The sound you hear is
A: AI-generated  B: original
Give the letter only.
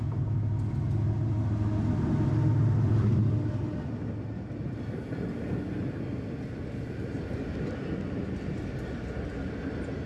B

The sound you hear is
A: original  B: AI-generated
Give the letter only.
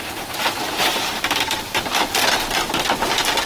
A